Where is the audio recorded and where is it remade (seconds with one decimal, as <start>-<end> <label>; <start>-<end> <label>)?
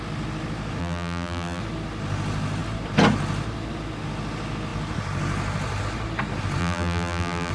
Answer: 0.0-0.8 recorded; 0.8-1.6 remade; 1.6-6.6 recorded; 6.6-7.5 remade